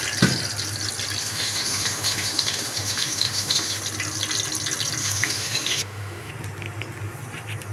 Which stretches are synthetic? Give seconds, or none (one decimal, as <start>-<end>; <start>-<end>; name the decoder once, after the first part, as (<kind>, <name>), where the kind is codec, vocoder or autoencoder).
1.2-3.8 (autoencoder, DAC-VAE); 5.0-6.3